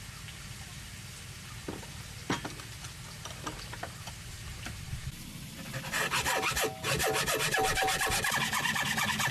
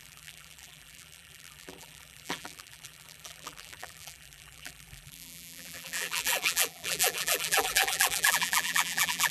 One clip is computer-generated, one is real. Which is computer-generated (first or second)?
second